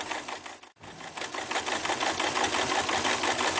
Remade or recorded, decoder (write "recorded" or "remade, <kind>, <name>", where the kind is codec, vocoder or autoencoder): recorded